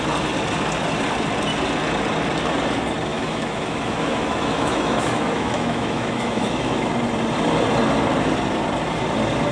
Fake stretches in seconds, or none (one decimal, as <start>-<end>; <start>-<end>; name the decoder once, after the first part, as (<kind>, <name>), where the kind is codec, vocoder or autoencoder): 3.1-6.9 (autoencoder, DAC-VAE)